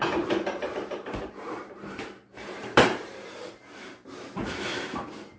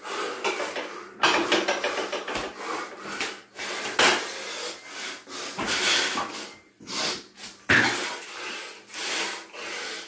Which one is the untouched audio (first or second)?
second